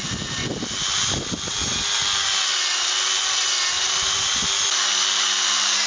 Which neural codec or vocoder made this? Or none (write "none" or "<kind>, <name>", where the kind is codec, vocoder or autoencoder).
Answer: none